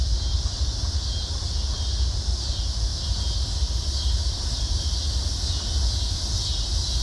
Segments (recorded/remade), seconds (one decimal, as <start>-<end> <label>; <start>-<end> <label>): 0.0-2.9 remade; 2.9-5.0 recorded; 5.0-7.0 remade